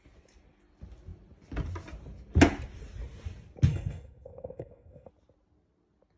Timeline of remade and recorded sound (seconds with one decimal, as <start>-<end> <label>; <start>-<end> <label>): 0.0-3.7 recorded; 3.7-5.1 remade; 5.1-6.2 recorded